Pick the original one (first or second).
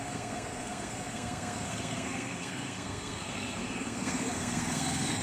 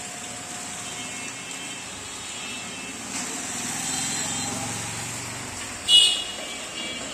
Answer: second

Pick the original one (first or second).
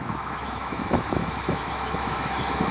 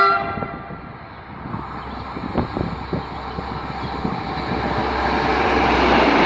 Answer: second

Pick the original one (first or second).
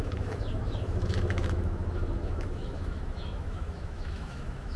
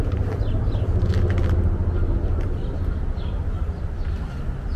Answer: second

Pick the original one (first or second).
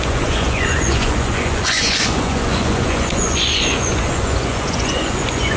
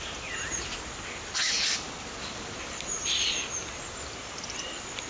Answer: second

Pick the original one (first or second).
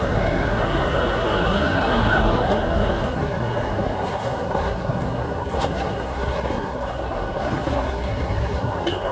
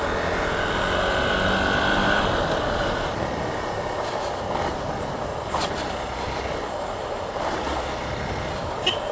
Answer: second